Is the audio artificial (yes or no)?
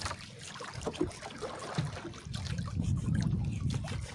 no